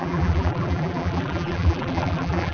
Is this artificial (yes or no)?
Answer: yes